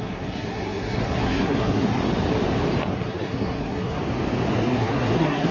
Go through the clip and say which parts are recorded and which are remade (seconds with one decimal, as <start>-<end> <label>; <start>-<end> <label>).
0.0-2.0 remade; 2.0-2.8 recorded; 2.8-4.0 remade; 4.0-4.5 recorded; 4.5-5.5 remade